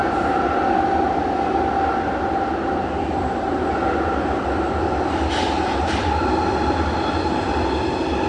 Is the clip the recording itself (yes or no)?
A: yes